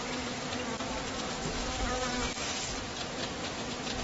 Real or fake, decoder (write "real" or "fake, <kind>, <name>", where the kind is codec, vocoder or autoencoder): real